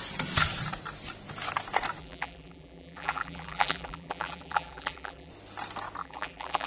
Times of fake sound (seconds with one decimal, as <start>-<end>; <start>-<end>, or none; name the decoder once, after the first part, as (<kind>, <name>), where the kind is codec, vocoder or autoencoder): 2.0-5.3 (vocoder, BigVGAN v2); 6.0-6.7